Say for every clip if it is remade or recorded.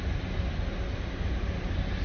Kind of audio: recorded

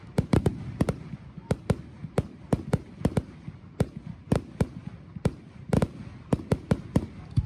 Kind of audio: recorded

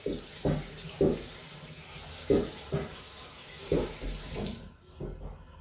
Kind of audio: recorded